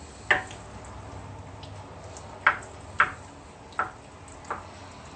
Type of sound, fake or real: real